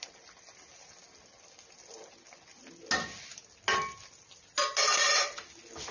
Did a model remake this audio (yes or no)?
no